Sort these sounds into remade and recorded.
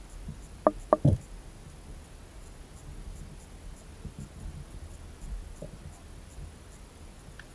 recorded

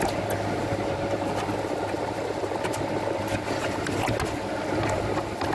recorded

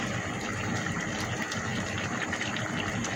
recorded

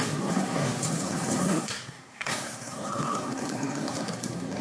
remade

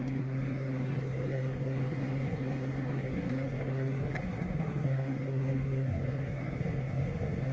remade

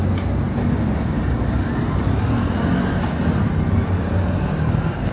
recorded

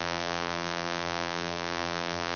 remade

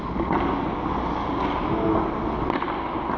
recorded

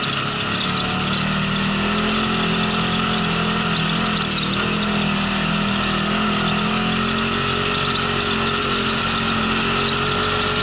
recorded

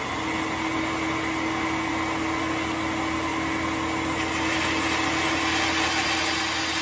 recorded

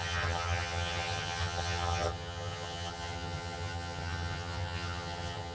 remade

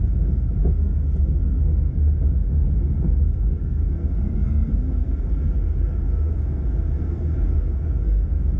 remade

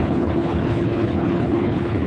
remade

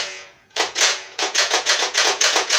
remade